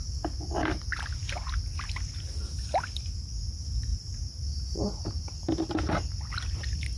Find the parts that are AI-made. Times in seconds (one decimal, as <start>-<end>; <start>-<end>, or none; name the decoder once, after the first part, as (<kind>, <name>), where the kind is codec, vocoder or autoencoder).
3.9-4.8 (vocoder, BigVGAN v2)